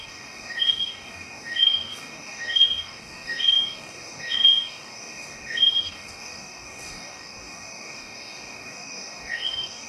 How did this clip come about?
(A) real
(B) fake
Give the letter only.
B